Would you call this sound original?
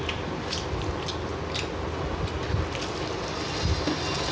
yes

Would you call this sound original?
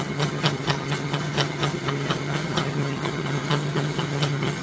no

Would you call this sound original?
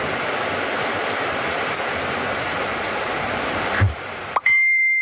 no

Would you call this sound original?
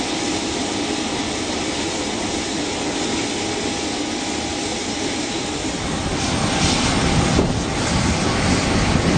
yes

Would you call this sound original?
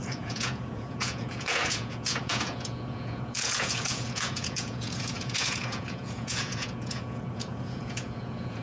no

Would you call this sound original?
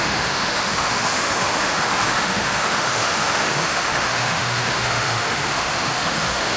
no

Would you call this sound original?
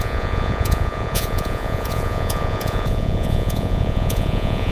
no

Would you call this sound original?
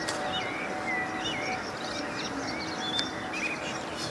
yes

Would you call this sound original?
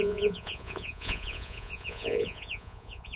no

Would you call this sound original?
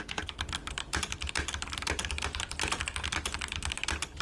yes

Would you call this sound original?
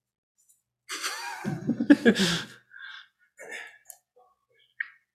yes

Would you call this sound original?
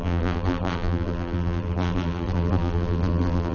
no